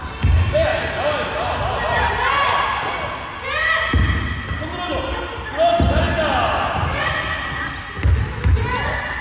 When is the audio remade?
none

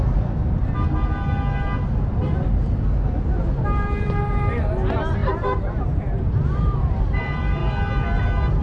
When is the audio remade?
0.0-0.6 (vocoder, BigVGAN v2); 3.6-7.6